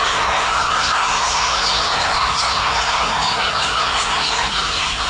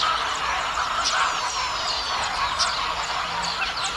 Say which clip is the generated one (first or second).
first